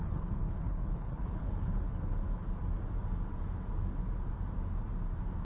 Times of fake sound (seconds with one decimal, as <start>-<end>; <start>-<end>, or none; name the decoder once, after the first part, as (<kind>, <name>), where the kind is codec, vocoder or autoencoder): 0.0-2.2 (codec, HILCodec)